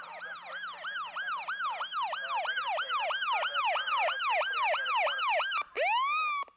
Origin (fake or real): real